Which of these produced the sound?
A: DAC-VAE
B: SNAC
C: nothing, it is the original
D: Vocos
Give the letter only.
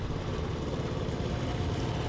C